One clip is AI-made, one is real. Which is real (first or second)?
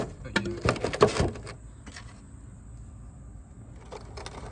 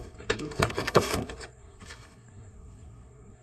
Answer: first